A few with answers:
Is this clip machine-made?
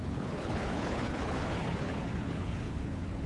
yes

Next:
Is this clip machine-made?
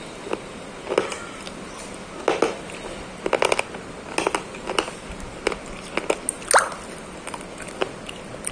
no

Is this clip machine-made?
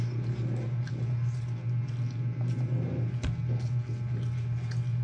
no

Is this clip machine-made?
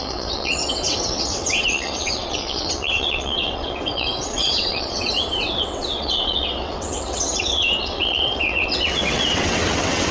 yes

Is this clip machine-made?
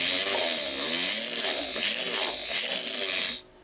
no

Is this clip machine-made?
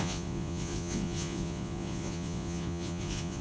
yes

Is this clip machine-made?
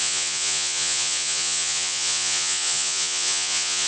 yes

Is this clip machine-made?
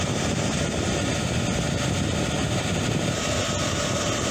no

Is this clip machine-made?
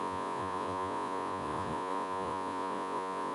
yes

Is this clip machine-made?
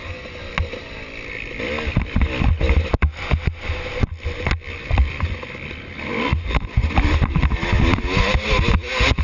no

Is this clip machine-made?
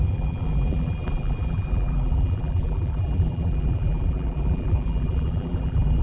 yes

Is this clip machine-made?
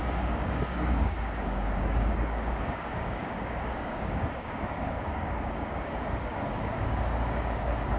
yes